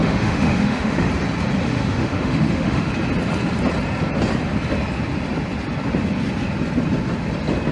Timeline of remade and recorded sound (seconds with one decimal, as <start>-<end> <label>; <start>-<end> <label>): 0.0-1.1 remade; 1.1-1.7 recorded; 1.7-2.9 remade; 2.9-7.7 recorded